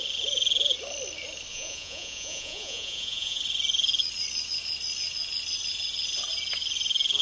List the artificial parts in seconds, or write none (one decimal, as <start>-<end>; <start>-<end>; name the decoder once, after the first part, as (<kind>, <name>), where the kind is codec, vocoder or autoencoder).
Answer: 1.5-3.4 (vocoder, Vocos)